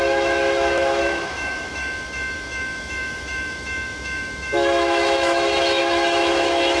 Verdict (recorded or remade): remade